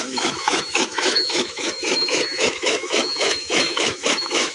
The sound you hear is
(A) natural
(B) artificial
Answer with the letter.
B